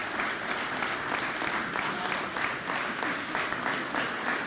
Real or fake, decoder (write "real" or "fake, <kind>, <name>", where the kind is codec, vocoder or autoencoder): real